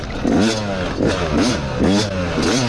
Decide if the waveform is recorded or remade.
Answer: recorded